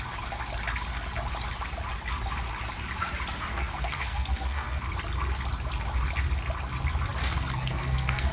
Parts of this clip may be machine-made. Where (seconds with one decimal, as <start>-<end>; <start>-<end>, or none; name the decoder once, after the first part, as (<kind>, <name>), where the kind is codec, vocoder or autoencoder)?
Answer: 3.5-4.8 (codec, SNAC); 7.2-8.3